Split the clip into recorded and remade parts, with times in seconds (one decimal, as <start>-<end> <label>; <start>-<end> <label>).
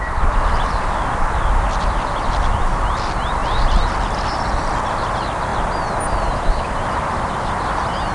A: 0.0-8.1 recorded